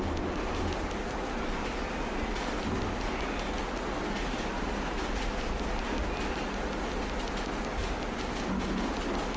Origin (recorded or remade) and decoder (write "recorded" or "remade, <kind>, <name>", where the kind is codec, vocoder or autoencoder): recorded